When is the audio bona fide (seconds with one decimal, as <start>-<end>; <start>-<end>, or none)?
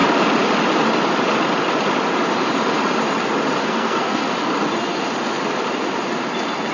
0.0-3.6; 4.3-6.7